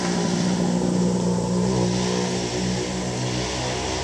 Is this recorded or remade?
recorded